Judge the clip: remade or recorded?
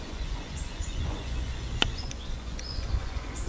remade